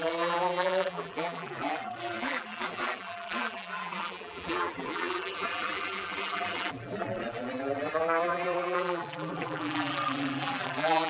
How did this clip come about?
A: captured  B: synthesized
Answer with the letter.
B